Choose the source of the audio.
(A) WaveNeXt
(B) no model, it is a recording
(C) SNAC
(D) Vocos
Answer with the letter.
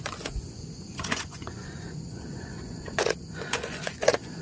D